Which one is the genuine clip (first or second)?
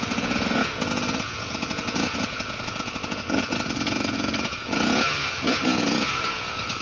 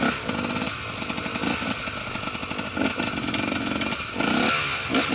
second